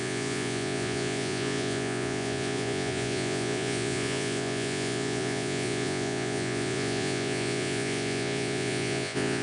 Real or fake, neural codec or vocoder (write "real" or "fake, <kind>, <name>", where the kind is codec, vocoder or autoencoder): fake, vocoder, Vocos